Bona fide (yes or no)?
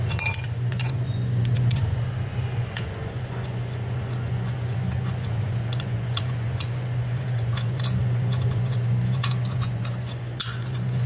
no